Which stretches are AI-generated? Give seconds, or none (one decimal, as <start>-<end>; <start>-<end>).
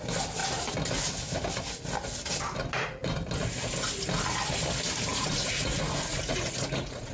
5.1-7.1